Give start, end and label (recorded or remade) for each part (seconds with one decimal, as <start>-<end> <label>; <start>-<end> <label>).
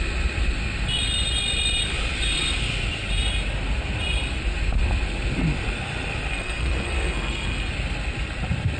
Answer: 0.0-6.3 recorded; 6.3-7.7 remade; 7.7-8.8 recorded